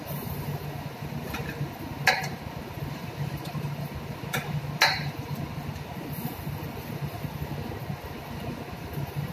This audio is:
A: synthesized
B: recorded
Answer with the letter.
B